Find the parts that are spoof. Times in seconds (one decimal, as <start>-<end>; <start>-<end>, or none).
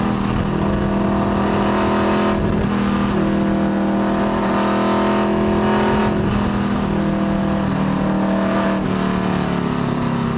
none